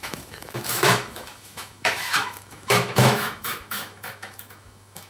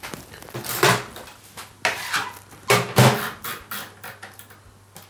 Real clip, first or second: second